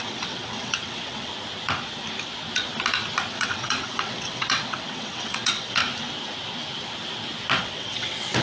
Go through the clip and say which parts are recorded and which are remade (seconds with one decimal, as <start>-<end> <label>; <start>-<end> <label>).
0.0-1.3 remade; 1.3-3.3 recorded; 3.3-5.8 remade; 5.8-7.6 recorded; 7.6-8.4 remade

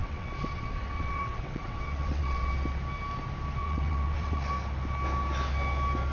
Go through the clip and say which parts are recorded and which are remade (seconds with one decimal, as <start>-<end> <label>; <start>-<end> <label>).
0.0-2.5 remade; 2.5-3.6 recorded; 3.6-4.5 remade; 4.5-6.1 recorded

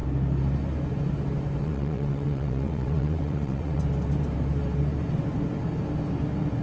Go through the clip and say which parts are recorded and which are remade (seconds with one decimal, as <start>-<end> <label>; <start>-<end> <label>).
0.0-1.6 recorded; 1.6-3.8 remade; 3.8-6.6 recorded

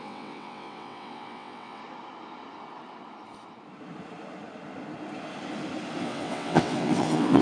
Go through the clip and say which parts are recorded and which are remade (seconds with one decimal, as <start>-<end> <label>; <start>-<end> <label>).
0.0-1.8 remade; 1.8-6.0 recorded; 6.0-7.4 remade

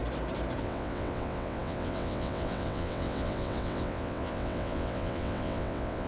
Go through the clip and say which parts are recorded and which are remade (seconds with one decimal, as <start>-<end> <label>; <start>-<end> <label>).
0.0-0.6 recorded; 0.6-6.1 remade

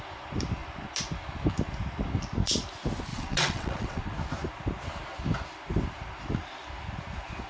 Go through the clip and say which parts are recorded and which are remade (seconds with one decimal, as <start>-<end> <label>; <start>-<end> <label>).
0.0-3.1 recorded; 3.1-4.0 remade; 4.0-7.5 recorded